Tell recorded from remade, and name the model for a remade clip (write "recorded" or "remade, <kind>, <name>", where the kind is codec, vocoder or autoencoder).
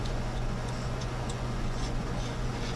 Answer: remade, vocoder, Vocos